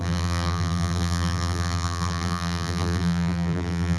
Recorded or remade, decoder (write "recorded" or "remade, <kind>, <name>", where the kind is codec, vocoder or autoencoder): remade, vocoder, BigVGAN v2